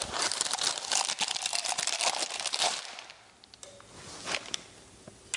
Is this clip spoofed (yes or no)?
no